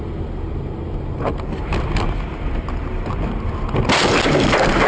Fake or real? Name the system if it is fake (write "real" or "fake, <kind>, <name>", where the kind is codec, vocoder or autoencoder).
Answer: real